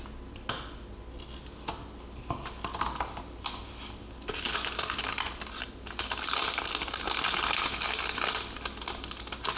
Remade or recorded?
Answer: recorded